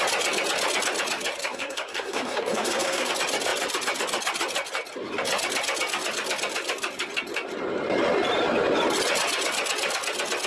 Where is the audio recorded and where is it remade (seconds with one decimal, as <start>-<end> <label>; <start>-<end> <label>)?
0.0-1.4 recorded; 1.4-3.1 remade; 3.1-10.5 recorded